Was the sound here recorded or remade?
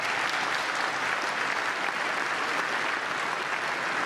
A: recorded